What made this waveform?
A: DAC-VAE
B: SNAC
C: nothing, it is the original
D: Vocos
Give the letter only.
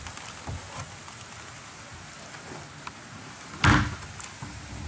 C